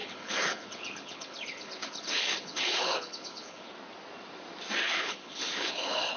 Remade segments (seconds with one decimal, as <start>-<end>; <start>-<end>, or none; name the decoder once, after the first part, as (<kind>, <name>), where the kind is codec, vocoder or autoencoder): 0.0-3.7 (codec, HILCodec); 4.8-6.2